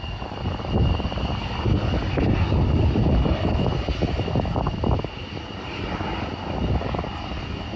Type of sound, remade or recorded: recorded